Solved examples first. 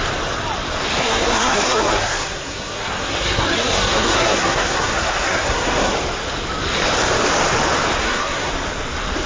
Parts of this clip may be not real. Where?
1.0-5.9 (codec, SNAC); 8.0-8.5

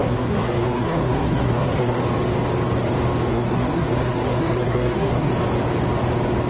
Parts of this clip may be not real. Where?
0.0-2.0 (codec, SNAC); 3.3-5.3

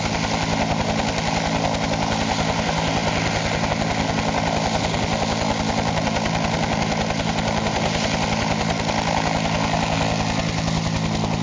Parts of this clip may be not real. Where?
none